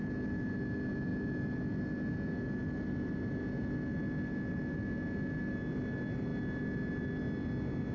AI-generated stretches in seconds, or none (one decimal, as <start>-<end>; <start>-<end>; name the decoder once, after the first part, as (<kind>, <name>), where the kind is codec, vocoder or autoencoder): none